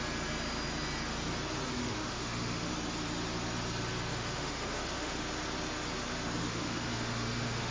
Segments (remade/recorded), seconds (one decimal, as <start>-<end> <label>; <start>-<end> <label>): 0.0-1.8 recorded; 1.8-2.7 remade; 2.7-4.1 recorded; 4.1-5.2 remade; 5.2-6.4 recorded; 6.4-7.7 remade